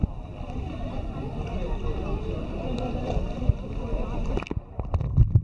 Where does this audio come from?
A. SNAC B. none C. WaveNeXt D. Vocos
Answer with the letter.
B